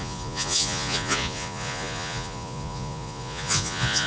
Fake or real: fake